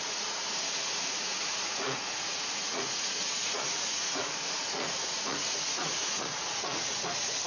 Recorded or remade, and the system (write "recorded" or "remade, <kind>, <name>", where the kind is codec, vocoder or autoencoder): remade, vocoder, Vocos